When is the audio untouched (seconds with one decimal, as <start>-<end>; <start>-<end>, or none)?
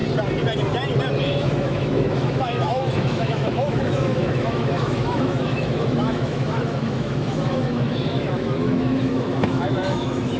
0.0-1.3